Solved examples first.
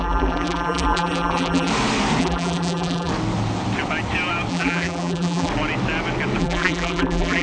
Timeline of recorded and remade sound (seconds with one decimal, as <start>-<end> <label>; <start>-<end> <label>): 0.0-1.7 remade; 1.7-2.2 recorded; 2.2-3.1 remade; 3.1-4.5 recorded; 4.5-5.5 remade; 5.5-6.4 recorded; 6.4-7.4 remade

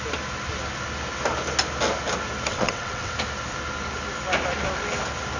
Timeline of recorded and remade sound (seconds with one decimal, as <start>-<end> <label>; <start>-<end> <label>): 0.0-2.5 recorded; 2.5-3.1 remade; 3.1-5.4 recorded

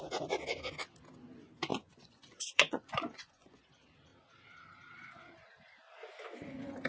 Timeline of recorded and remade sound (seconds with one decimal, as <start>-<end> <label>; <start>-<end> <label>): 0.0-1.7 recorded; 1.7-3.6 remade; 3.6-6.9 recorded

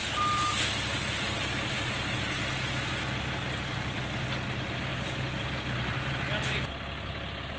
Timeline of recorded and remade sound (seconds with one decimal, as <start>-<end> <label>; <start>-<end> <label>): 0.0-7.6 recorded